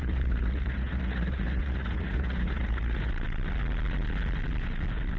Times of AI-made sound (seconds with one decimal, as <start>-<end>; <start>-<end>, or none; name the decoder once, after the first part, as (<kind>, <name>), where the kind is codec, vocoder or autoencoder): 0.0-3.1 (vocoder, Vocos)